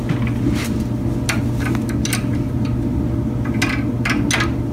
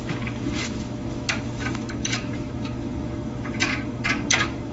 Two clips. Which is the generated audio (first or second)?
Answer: second